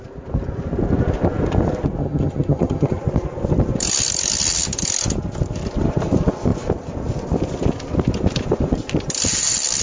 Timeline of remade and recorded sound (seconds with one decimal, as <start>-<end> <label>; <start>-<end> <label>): 0.0-2.0 recorded; 2.0-3.0 remade; 3.0-9.8 recorded